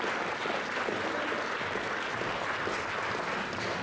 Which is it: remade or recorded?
recorded